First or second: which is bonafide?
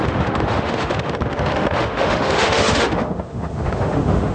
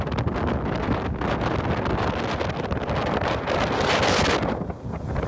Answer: second